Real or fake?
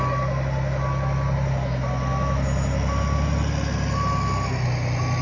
real